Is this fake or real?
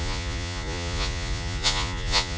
fake